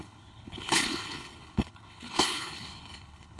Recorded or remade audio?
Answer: remade